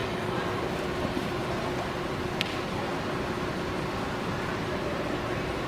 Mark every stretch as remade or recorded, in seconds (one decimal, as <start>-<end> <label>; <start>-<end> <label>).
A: 0.0-1.4 remade; 1.4-4.4 recorded; 4.4-5.7 remade